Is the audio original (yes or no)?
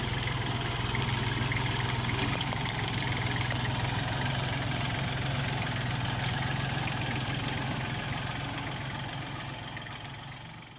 yes